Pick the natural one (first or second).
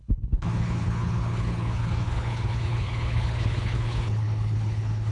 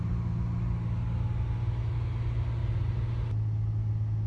second